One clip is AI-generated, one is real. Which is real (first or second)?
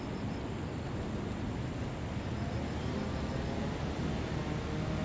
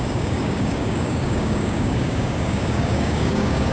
first